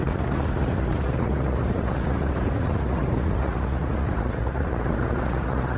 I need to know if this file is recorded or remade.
remade